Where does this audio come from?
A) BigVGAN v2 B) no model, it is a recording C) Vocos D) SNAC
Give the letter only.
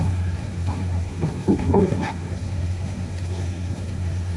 D